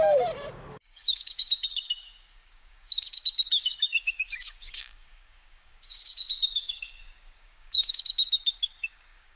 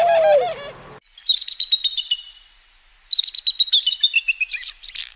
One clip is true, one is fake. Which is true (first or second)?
second